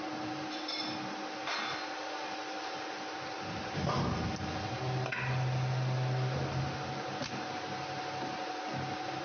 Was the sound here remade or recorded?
recorded